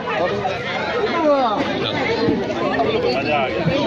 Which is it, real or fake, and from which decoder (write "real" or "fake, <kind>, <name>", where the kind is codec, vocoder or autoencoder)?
real